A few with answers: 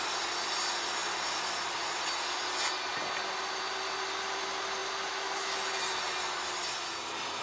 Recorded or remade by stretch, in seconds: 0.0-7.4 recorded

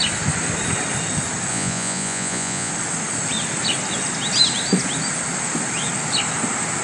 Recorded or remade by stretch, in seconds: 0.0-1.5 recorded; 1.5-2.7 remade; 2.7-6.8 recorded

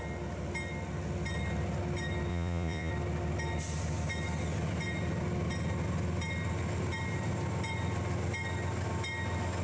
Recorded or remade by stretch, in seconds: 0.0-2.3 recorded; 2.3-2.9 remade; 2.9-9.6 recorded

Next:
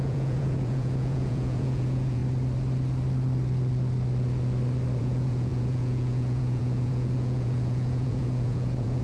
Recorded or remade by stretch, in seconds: 0.0-2.2 remade; 2.2-5.0 recorded; 5.0-9.0 remade

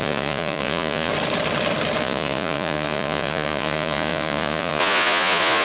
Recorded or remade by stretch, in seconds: 0.0-1.1 remade; 1.1-2.0 recorded; 2.0-5.6 remade

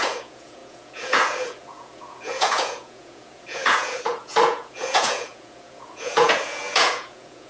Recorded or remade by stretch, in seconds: 0.0-7.5 remade

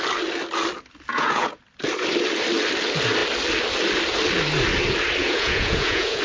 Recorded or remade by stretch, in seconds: 0.0-1.1 recorded; 1.1-1.6 remade; 1.6-5.2 recorded; 5.2-6.2 remade